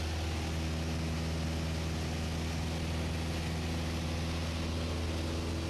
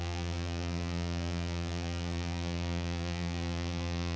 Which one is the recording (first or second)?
first